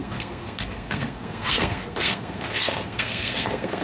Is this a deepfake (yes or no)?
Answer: yes